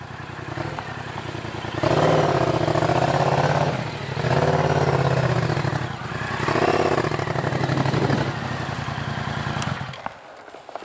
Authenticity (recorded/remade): recorded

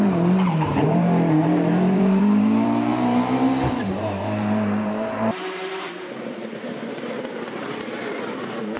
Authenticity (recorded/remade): remade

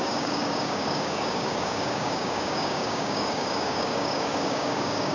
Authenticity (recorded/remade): remade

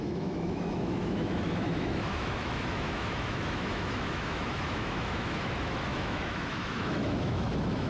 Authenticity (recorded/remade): remade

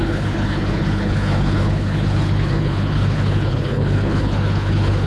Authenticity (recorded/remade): remade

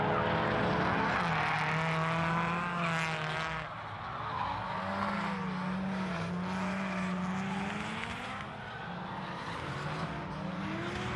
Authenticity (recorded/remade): recorded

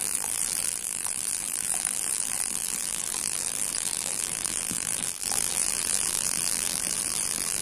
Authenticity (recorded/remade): remade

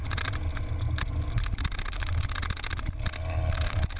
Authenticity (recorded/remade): recorded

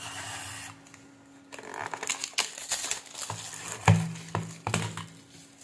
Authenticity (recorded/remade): recorded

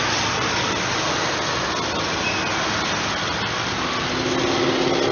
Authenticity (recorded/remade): recorded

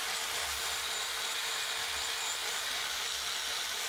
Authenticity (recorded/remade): recorded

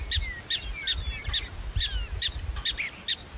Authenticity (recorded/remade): recorded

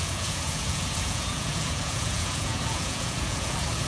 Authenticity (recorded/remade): remade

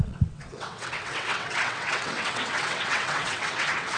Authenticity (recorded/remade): remade